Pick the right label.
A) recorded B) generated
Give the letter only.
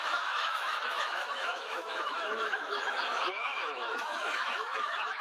B